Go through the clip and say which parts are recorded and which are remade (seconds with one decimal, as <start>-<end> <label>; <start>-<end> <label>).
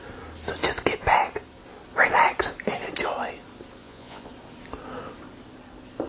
0.0-3.8 recorded; 3.8-4.3 remade; 4.3-6.1 recorded